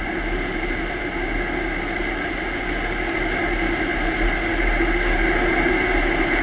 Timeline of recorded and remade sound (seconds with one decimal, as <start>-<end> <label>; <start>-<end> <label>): 0.0-6.4 recorded